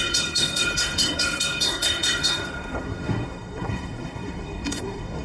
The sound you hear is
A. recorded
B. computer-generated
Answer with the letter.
B